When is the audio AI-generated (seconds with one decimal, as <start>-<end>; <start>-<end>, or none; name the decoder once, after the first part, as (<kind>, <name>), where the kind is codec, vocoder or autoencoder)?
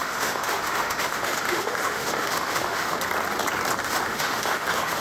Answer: 0.0-3.0 (autoencoder, DAC-VAE); 3.8-5.0